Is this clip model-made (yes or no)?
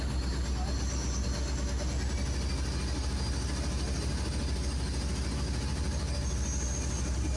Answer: no